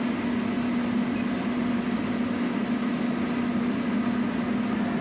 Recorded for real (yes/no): yes